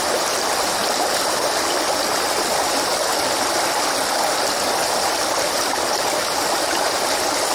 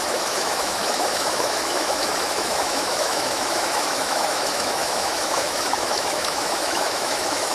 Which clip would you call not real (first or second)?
second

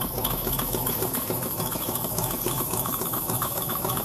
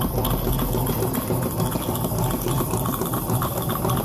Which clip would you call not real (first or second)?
first